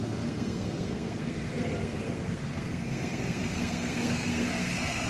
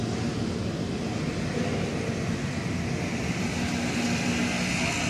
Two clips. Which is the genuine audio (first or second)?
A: second